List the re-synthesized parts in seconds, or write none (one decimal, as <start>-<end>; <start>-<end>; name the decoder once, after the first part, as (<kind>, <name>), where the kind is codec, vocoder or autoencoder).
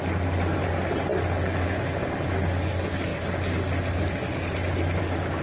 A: none